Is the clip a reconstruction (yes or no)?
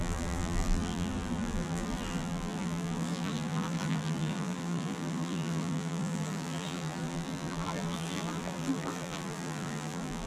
yes